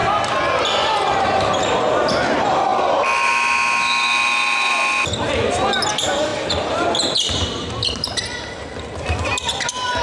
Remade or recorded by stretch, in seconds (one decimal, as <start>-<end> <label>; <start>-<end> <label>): 0.0-10.0 recorded